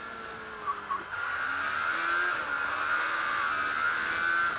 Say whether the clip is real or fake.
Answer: real